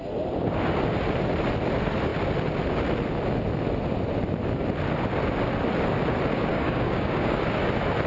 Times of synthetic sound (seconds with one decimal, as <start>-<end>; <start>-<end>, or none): 6.5-7.4